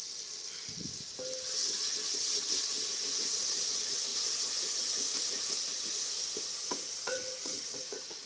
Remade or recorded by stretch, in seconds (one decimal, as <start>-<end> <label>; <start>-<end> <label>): 0.0-2.9 recorded; 2.9-8.3 remade